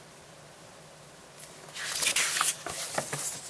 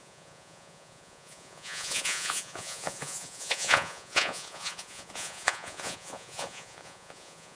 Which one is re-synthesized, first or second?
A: second